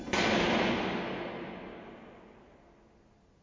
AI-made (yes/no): no